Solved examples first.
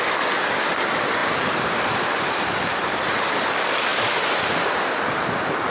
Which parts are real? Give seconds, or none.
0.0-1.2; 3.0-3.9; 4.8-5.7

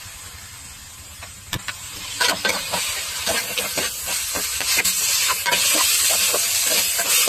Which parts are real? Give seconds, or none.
0.0-1.1; 5.5-7.3